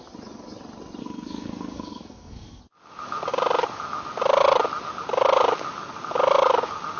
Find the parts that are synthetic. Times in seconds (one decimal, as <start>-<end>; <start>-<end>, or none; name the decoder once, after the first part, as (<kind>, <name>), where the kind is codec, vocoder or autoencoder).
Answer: 1.0-2.6 (codec, SNAC)